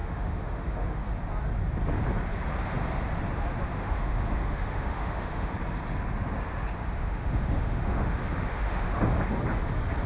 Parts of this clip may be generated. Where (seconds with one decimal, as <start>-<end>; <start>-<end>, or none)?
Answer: 0.0-1.0; 3.7-5.5; 7.0-9.0